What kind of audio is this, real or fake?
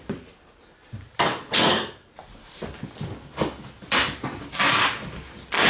real